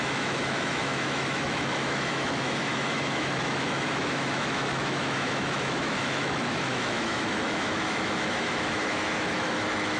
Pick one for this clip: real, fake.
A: fake